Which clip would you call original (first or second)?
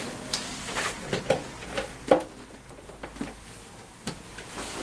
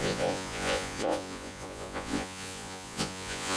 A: first